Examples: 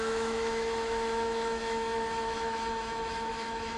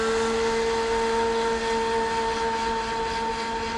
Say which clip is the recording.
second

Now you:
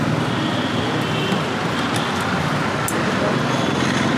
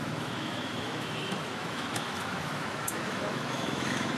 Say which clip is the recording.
first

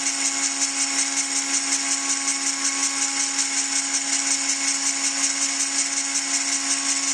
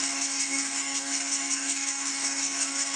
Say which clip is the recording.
first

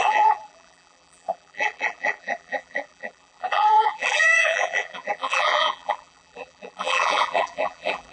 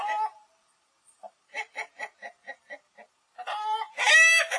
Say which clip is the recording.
second